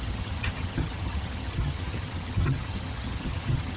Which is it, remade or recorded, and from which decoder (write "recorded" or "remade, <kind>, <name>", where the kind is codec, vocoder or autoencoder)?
remade, vocoder, HiFi-GAN